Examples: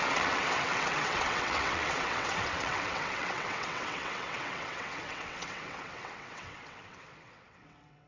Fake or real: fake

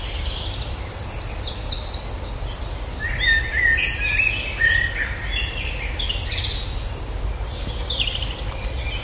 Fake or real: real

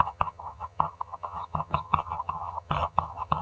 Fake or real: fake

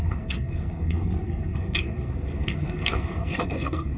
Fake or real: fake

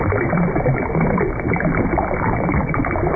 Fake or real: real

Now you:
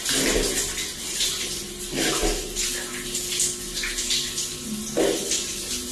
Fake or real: real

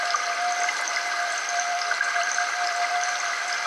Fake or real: fake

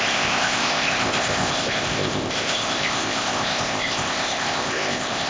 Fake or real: fake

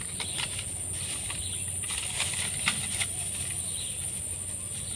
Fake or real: real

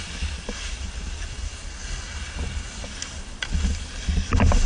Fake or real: real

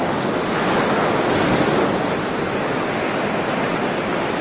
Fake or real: real